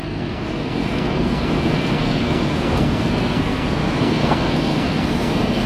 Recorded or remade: remade